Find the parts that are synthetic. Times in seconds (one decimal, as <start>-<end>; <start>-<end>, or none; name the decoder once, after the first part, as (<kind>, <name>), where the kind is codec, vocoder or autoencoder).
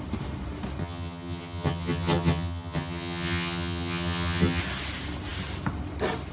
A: 0.8-4.6 (vocoder, HiFi-GAN)